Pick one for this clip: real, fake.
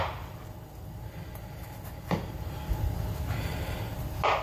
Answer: real